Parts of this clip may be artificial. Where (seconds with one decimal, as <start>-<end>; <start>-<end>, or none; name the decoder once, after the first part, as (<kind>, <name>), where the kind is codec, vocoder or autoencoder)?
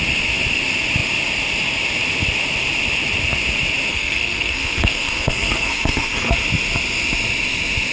3.9-6.3 (codec, SNAC)